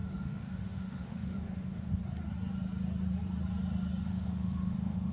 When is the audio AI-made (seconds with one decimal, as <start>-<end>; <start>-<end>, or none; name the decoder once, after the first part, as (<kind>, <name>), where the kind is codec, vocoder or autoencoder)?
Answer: 0.0-2.0 (autoencoder, DAC-VAE); 4.0-5.1